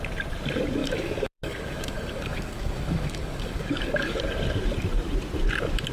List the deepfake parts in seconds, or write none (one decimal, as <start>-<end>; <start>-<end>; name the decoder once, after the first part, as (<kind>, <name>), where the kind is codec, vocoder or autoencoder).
0.8-4.2 (codec, DAC)